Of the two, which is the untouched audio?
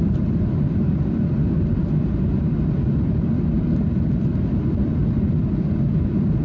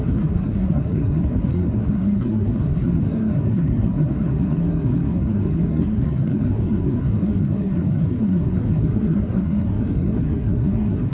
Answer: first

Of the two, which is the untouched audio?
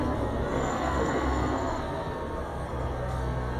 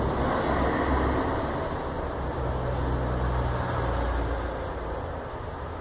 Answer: second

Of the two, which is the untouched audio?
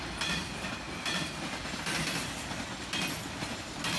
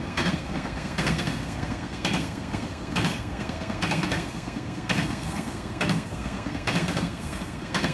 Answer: first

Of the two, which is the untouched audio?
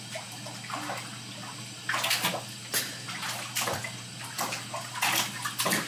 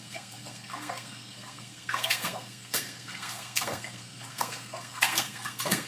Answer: first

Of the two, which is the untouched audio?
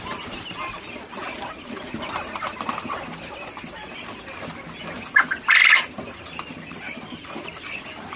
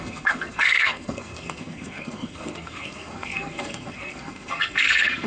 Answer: first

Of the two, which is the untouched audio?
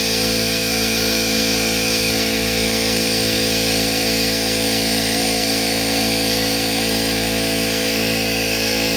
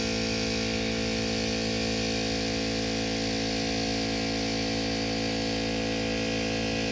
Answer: second